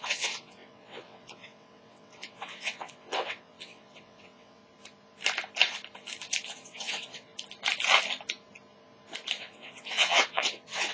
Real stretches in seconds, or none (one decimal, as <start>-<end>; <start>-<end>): 4.6-6.5; 7.3-9.4

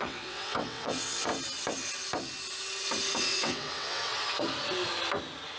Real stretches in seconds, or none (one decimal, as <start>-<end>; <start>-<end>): 1.3-3.2; 4.1-5.6